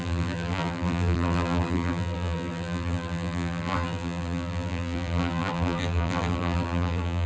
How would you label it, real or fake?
fake